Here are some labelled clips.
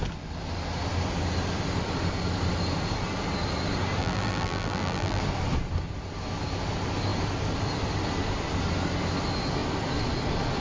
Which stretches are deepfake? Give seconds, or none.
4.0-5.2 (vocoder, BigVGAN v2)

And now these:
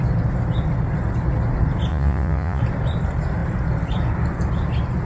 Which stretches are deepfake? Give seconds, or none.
1.9-2.6 (vocoder, Vocos)

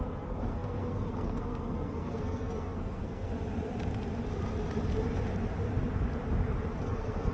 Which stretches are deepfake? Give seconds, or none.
0.0-3.3 (codec, SNAC); 6.8-7.3